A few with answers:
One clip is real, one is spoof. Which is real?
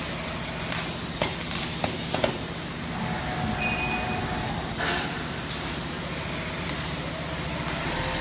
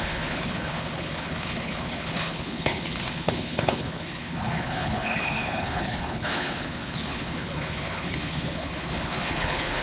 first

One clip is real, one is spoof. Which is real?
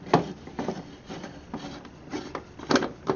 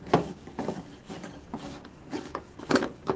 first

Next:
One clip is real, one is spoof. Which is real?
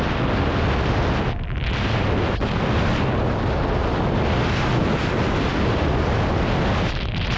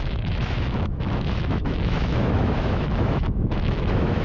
first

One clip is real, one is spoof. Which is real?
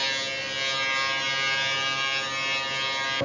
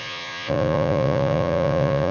first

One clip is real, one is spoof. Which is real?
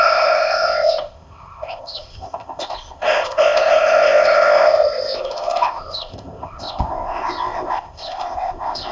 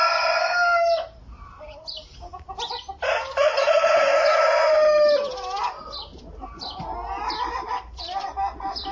second